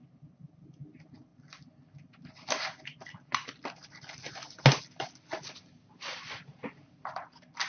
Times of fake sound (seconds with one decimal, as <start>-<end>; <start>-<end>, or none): none